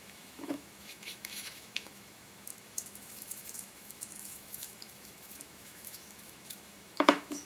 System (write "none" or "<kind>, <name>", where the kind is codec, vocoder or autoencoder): autoencoder, DAC-VAE